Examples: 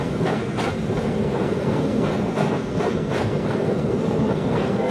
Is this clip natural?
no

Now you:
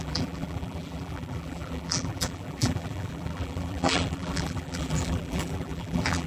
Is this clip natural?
no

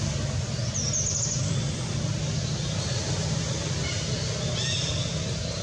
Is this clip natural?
yes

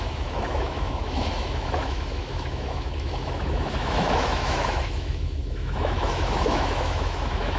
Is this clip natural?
no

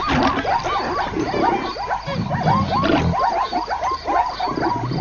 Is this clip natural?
yes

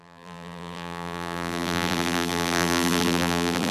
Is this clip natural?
no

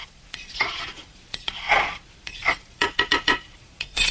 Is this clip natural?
no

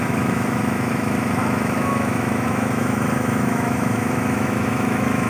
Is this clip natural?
no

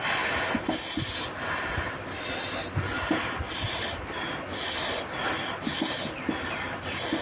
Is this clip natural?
yes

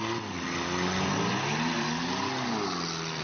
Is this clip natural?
yes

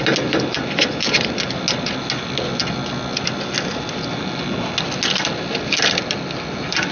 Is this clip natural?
yes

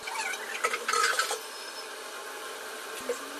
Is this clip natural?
yes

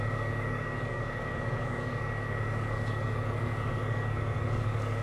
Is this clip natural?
no